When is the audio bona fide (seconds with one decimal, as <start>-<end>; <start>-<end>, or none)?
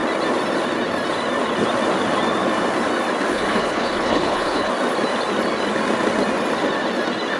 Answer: 0.0-3.3; 4.7-7.4